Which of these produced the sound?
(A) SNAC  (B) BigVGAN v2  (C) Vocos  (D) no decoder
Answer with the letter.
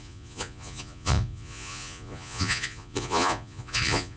C